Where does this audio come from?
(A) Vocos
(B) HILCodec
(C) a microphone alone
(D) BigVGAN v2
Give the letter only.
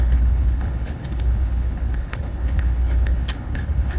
B